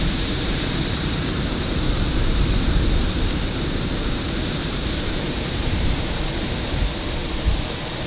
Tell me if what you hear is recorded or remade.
remade